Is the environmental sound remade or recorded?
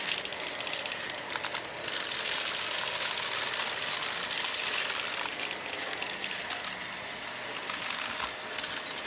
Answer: recorded